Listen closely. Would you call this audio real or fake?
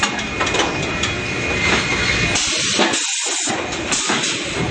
real